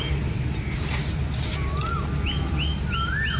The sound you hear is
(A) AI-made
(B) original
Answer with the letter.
B